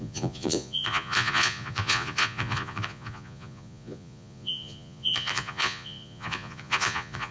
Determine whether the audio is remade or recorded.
remade